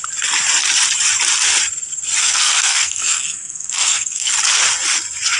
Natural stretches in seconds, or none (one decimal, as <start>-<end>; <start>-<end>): 0.0-2.2; 4.3-5.4